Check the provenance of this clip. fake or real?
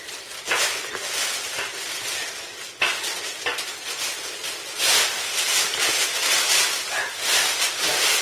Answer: real